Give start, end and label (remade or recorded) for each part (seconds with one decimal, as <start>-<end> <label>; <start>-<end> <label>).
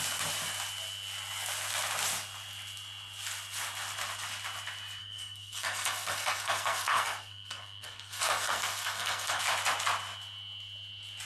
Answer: 0.0-5.0 recorded; 5.0-9.4 remade; 9.4-11.3 recorded